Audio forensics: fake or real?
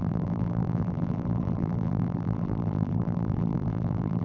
fake